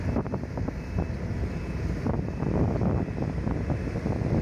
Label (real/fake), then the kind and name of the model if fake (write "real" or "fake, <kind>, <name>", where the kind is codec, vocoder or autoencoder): real